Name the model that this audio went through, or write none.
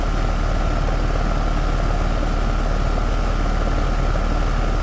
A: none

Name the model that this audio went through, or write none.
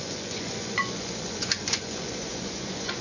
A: vocoder, Vocos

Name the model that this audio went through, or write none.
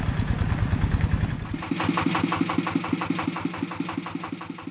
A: none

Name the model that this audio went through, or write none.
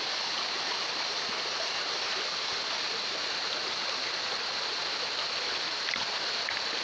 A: none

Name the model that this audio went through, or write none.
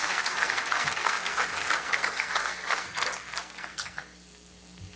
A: codec, SNAC